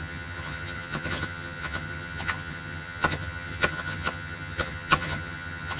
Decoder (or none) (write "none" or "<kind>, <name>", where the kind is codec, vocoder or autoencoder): vocoder, HiFi-GAN